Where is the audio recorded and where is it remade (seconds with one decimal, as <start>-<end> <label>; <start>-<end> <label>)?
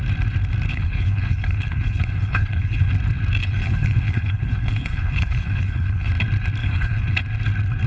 0.0-0.7 recorded; 0.7-2.9 remade; 2.9-3.4 recorded; 3.4-6.1 remade; 6.1-6.6 recorded; 6.6-7.2 remade; 7.2-7.9 recorded